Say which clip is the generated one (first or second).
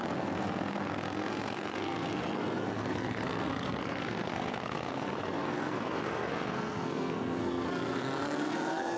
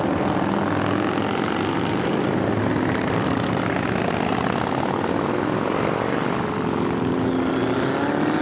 first